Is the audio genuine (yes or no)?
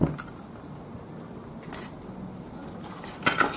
yes